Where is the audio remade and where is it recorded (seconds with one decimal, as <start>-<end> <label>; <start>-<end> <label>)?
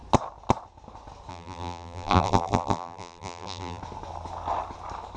0.0-1.3 recorded; 1.3-3.8 remade; 3.8-5.2 recorded